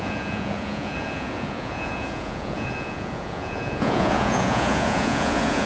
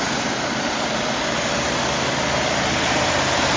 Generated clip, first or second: first